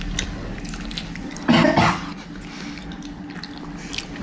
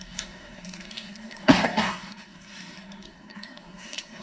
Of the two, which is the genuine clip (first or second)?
first